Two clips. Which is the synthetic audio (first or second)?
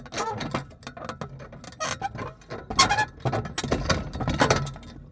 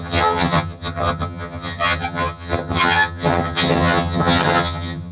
second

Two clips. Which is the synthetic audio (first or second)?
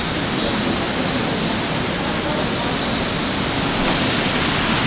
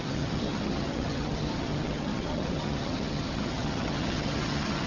second